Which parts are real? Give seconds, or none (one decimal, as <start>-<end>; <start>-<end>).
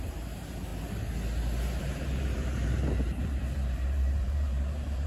0.7-1.8